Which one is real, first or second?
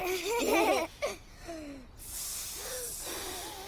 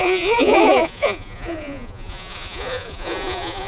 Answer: first